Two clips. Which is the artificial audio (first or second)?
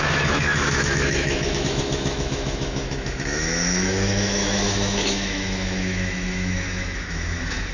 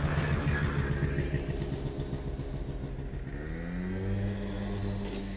first